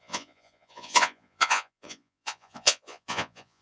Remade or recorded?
remade